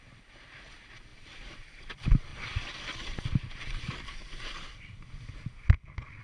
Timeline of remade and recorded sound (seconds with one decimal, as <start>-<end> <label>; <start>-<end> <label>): 0.0-1.1 recorded; 1.1-1.9 remade; 1.9-2.3 recorded; 2.3-5.1 remade; 5.1-6.2 recorded